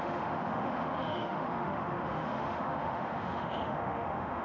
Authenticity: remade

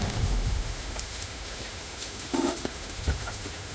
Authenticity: remade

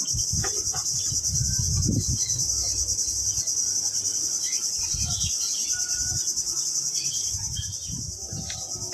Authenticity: recorded